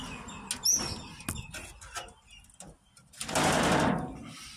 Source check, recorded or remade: recorded